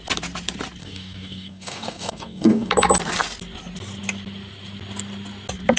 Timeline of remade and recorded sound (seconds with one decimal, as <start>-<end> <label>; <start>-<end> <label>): 0.0-0.8 recorded; 0.8-2.7 remade; 2.7-5.8 recorded